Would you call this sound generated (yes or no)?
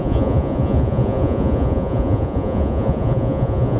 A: yes